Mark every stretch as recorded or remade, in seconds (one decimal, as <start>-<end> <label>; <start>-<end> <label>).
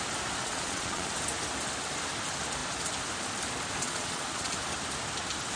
0.0-0.4 recorded; 0.4-1.1 remade; 1.1-3.8 recorded; 3.8-4.5 remade; 4.5-5.6 recorded